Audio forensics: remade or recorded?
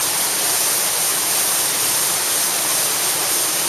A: recorded